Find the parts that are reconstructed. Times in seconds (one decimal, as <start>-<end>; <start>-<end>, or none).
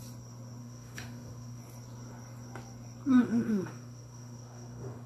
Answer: 0.6-1.6; 3.2-5.1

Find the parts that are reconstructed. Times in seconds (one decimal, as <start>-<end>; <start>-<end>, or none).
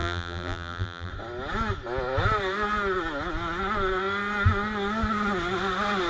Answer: 0.0-1.1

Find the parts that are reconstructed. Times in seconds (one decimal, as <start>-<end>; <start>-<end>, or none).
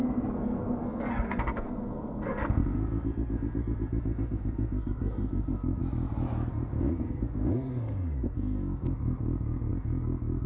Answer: 0.0-5.8; 6.5-10.5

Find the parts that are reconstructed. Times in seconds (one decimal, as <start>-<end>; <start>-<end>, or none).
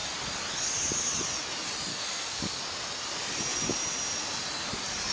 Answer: 1.9-2.6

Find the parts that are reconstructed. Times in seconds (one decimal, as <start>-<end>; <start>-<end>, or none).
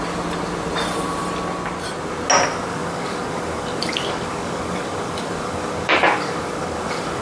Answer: 2.7-7.2